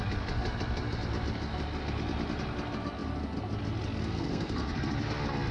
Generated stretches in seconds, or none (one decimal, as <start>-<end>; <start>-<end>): 4.0-4.9